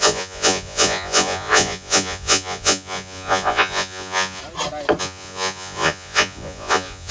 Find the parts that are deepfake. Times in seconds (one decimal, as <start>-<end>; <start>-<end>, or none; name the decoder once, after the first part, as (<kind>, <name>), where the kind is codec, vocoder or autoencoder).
0.0-4.4 (vocoder, Vocos); 5.0-7.1